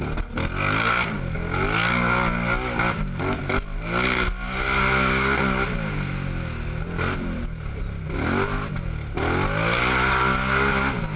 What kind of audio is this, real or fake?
real